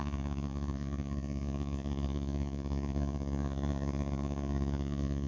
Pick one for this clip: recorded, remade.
remade